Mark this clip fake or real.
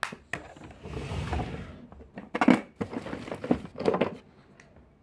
real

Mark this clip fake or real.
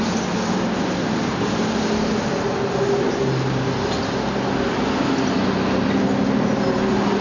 real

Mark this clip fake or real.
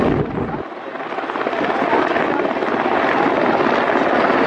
real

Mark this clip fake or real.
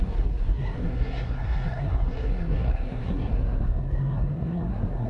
fake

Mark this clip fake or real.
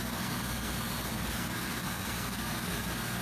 fake